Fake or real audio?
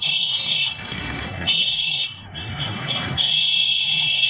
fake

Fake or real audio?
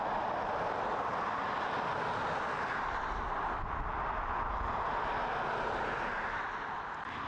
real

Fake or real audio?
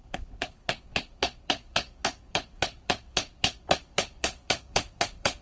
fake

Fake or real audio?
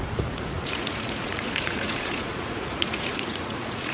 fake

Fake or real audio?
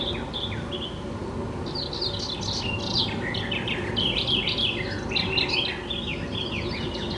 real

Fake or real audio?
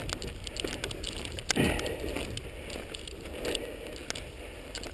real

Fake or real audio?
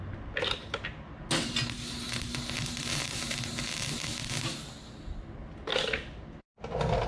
real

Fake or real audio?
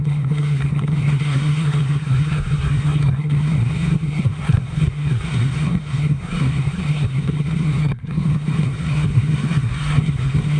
fake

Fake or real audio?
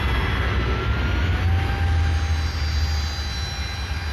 real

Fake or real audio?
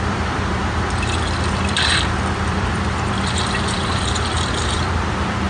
fake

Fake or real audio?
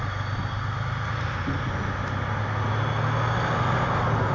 real